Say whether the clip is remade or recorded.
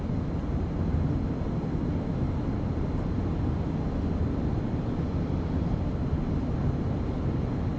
recorded